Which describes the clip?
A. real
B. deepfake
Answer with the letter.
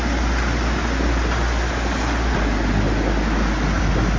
A